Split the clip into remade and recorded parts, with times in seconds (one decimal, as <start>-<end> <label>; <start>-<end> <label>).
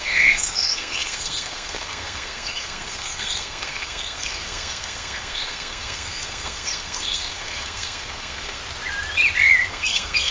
0.0-8.6 remade; 8.6-9.7 recorded; 9.7-10.3 remade